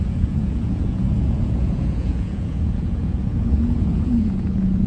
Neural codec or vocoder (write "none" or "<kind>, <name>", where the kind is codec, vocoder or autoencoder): vocoder, Vocos